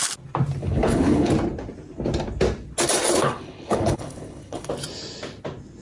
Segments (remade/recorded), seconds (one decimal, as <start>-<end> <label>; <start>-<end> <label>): 0.0-0.6 recorded; 0.6-1.3 remade; 1.3-3.2 recorded; 3.2-4.7 remade; 4.7-5.8 recorded